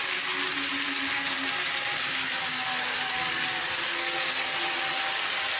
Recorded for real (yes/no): yes